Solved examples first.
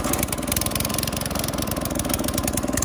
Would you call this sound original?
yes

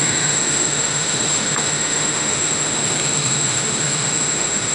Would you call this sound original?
no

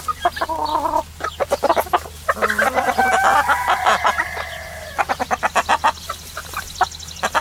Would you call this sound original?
yes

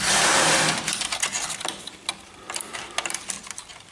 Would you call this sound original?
yes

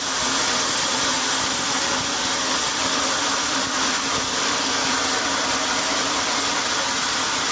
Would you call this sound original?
yes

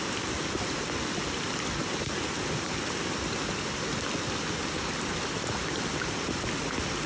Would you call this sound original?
yes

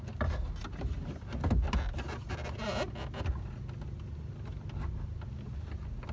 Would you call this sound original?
yes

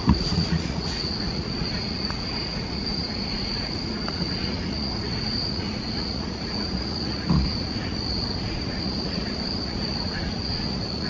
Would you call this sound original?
no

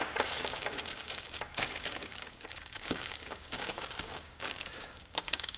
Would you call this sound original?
no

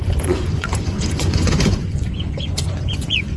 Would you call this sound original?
no